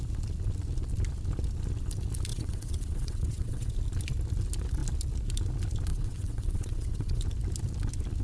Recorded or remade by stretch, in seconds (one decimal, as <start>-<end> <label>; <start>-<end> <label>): 0.0-2.3 recorded; 2.3-3.7 remade; 3.7-5.9 recorded; 5.9-7.2 remade; 7.2-8.2 recorded